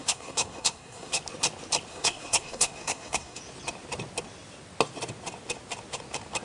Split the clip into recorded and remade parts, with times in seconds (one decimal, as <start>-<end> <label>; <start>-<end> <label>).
0.0-1.2 remade; 1.2-1.9 recorded; 1.9-3.4 remade; 3.4-6.4 recorded